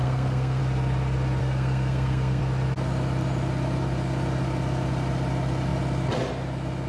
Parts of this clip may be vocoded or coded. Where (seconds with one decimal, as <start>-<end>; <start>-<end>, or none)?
0.0-0.6; 1.4-2.4